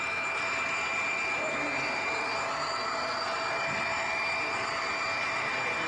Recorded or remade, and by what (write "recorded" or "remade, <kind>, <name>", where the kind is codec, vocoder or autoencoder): recorded